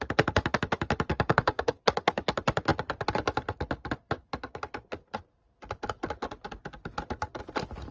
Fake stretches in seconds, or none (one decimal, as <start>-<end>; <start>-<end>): 1.1-1.8